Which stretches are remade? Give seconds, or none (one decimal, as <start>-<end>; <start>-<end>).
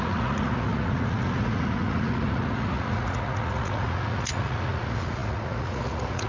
0.0-6.3